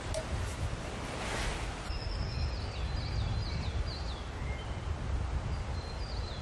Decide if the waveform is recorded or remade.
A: recorded